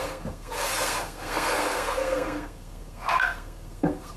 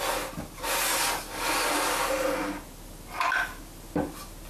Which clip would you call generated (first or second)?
first